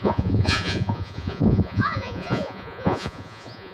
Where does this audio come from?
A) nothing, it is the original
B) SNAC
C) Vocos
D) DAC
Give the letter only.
C